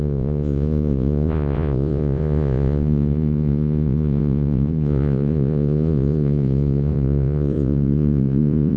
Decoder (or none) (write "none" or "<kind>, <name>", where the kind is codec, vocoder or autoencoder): vocoder, Vocos